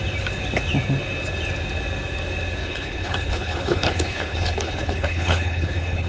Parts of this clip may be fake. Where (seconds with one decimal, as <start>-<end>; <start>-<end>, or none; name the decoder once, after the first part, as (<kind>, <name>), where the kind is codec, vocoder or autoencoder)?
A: 2.6-6.1 (codec, HILCodec)